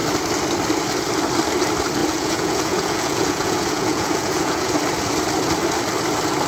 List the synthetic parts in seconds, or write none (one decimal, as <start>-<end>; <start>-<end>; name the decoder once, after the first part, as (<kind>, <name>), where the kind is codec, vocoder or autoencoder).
2.0-4.7 (vocoder, Vocos)